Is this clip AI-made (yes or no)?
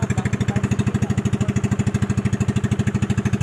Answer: no